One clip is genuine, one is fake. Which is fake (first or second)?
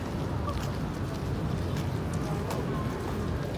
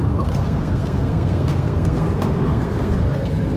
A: second